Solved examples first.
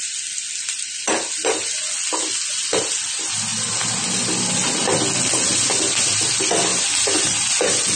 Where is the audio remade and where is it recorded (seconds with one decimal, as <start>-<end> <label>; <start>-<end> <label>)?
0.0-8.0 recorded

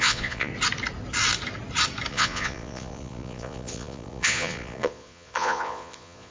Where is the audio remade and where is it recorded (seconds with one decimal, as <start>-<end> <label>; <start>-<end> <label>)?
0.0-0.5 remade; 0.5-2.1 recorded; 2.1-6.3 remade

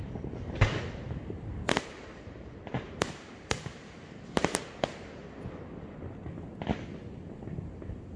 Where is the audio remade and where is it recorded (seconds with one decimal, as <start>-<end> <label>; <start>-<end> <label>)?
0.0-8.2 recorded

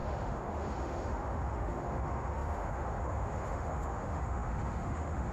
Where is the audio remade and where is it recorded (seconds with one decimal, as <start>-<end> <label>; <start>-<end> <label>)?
0.0-5.3 remade

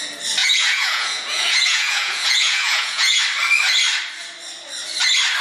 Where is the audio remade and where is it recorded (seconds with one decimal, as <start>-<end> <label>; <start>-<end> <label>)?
0.0-0.4 recorded; 0.4-3.2 remade; 3.2-5.4 recorded

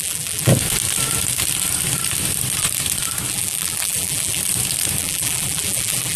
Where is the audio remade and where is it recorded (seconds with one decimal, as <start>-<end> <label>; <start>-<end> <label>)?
0.0-0.5 remade; 0.5-3.3 recorded; 3.3-4.4 remade; 4.4-5.0 recorded; 5.0-6.2 remade

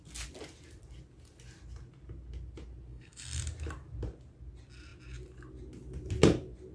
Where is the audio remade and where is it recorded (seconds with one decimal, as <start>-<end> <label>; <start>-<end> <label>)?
0.0-2.9 recorded; 2.9-3.4 remade; 3.4-6.7 recorded